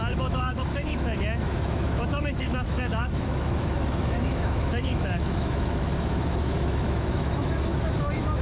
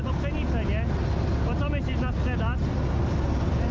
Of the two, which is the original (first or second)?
second